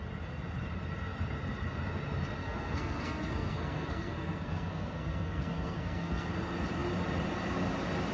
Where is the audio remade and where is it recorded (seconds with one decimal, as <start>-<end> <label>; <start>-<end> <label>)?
0.0-2.4 recorded; 2.4-6.3 remade; 6.3-8.1 recorded